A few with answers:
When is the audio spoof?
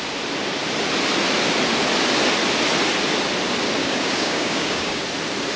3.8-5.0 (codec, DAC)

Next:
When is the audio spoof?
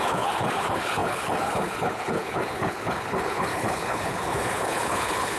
0.0-5.4 (codec, HILCodec)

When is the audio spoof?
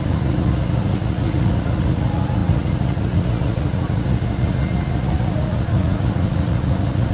0.0-7.1 (vocoder, Vocos)